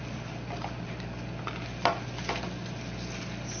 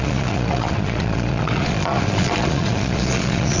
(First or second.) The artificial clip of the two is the second